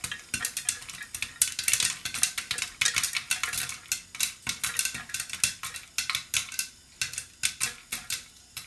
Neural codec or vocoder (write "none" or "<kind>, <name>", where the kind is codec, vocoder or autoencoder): none